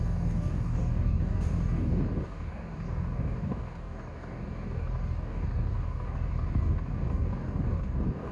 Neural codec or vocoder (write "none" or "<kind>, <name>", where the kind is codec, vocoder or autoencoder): codec, DAC